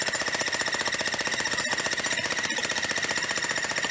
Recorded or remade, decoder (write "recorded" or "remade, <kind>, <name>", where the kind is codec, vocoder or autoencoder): recorded